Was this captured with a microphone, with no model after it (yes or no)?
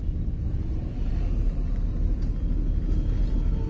yes